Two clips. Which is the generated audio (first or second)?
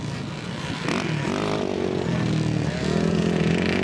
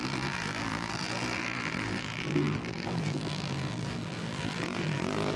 second